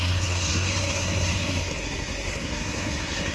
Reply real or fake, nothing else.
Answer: fake